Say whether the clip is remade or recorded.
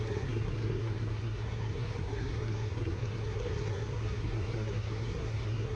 remade